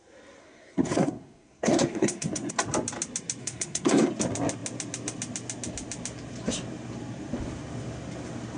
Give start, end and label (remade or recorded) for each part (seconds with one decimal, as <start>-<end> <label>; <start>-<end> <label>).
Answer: 0.0-0.4 recorded; 0.4-2.5 remade; 2.5-3.4 recorded; 3.4-4.1 remade; 4.1-8.6 recorded